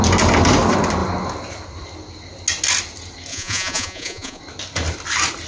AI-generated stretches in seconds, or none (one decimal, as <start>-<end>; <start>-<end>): 3.3-4.4